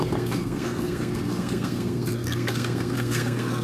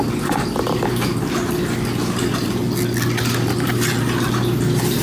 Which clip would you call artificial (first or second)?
first